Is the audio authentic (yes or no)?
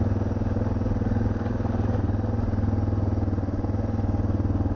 yes